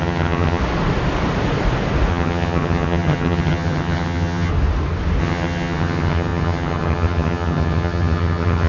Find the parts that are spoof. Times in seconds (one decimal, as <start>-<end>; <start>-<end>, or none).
0.0-0.6; 2.1-4.5; 5.2-8.7